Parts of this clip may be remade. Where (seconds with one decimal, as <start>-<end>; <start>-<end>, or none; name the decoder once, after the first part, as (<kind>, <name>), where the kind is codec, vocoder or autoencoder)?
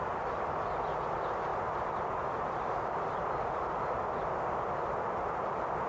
none